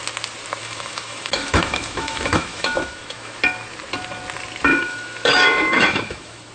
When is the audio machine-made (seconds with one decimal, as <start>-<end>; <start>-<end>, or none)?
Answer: 0.6-3.4; 4.7-6.5